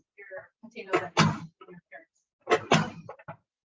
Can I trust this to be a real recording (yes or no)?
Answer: yes